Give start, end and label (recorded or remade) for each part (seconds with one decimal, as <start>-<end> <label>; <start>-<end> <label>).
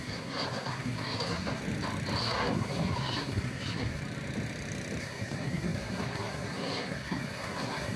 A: 0.0-1.6 remade; 1.6-2.2 recorded; 2.2-4.0 remade; 4.0-5.0 recorded; 5.0-8.0 remade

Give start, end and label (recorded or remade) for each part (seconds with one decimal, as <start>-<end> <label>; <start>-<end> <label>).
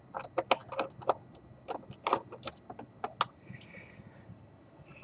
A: 0.0-5.0 recorded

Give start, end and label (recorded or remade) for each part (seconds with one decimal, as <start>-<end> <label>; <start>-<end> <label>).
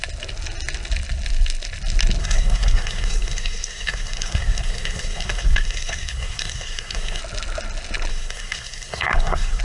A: 0.0-2.2 recorded; 2.2-7.2 remade; 7.2-8.1 recorded; 8.1-9.6 remade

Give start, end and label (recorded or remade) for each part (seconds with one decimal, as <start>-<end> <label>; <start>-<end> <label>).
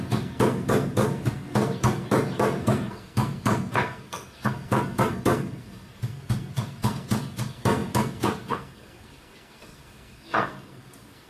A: 0.0-11.3 remade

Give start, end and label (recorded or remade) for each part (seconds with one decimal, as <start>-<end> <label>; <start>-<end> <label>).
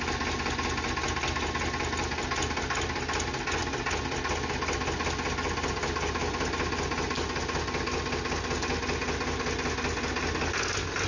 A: 0.0-11.1 recorded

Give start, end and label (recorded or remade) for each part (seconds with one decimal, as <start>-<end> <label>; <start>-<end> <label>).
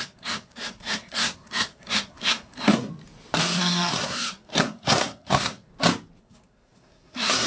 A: 0.0-2.9 remade; 2.9-3.4 recorded; 3.4-5.7 remade; 5.7-6.2 recorded; 6.2-7.5 remade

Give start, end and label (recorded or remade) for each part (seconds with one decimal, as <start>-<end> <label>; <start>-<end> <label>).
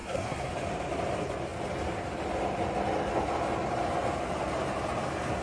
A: 0.0-0.5 remade; 0.5-5.4 recorded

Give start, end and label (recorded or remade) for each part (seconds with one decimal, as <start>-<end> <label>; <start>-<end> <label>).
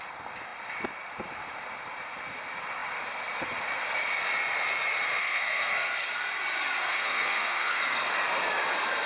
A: 0.0-5.2 recorded; 5.2-5.9 remade; 5.9-6.8 recorded; 6.8-7.8 remade; 7.8-9.1 recorded